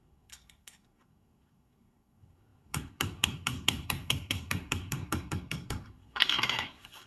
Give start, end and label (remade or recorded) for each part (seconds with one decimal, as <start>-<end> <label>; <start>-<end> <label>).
0.0-7.1 remade